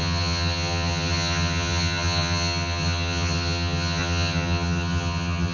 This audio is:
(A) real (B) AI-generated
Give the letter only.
B